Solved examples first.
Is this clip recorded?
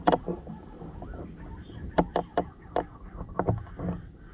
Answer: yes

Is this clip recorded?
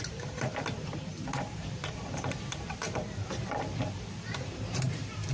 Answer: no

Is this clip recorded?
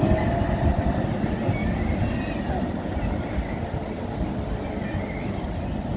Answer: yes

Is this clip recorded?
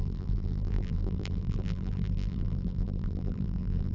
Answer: no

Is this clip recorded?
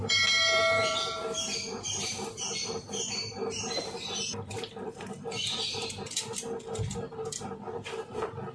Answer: no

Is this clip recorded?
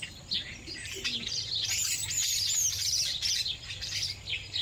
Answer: yes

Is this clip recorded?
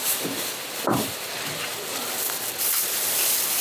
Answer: yes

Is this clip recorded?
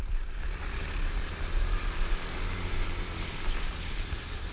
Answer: no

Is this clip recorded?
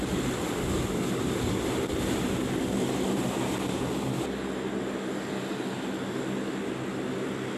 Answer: yes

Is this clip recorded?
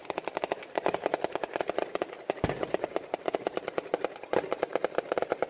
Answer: no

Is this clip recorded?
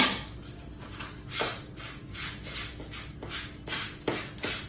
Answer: yes